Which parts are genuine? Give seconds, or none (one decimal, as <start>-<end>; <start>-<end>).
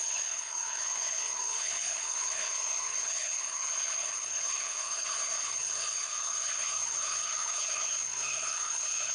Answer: none